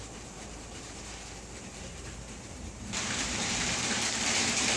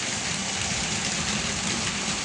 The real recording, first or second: second